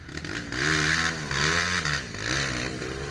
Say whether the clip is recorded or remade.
recorded